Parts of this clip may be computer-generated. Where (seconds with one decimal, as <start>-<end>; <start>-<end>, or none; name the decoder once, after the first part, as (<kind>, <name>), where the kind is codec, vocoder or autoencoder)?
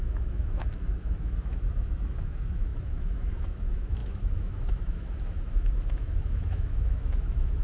0.0-7.6 (autoencoder, DAC-VAE)